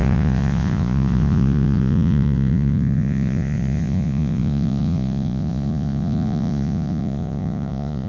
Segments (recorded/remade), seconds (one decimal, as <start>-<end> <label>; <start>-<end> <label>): 0.0-8.1 remade